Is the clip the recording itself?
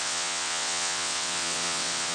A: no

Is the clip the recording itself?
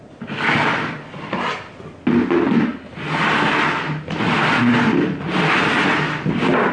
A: yes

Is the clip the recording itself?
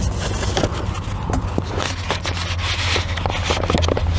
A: yes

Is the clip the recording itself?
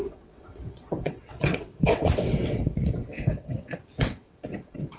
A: no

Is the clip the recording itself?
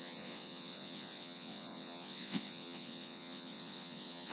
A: no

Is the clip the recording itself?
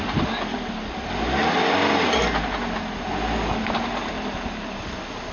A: yes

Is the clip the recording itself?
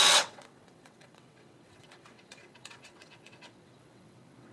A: no